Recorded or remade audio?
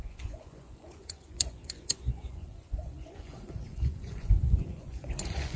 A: remade